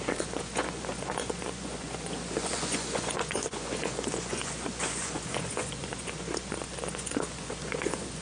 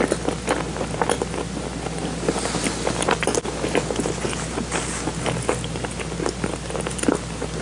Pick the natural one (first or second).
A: second